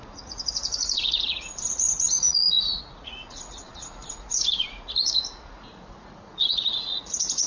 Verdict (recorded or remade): remade